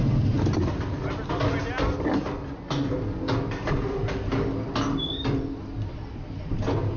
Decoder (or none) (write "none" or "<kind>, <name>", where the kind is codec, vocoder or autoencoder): none